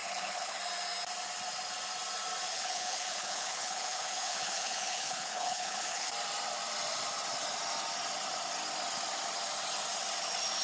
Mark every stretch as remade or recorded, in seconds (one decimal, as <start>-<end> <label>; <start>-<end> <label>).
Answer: 0.0-0.6 remade; 0.6-2.5 recorded; 2.5-6.1 remade; 6.1-10.6 recorded